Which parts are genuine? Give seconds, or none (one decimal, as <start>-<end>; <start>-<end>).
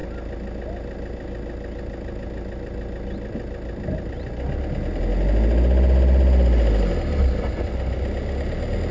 0.0-8.9